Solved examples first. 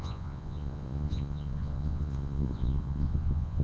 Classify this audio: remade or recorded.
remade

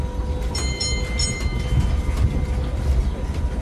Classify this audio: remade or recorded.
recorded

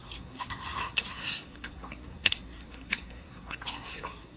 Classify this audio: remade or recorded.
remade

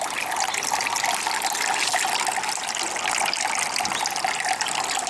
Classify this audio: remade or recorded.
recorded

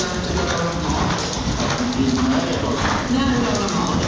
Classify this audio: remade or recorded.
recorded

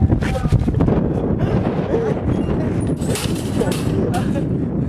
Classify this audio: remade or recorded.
recorded